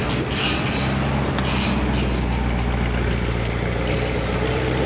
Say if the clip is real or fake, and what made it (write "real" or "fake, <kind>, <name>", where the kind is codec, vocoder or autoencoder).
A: real